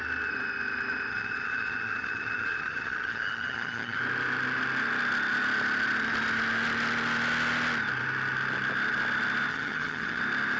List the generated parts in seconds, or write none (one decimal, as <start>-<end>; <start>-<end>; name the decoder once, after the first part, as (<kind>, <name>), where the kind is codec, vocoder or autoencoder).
1.1-4.0 (vocoder, HiFi-GAN); 9.5-10.2